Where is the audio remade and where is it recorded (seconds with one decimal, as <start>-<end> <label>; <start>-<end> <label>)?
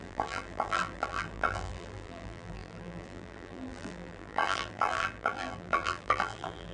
0.0-6.7 remade